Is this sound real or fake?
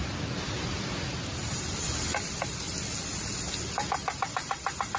real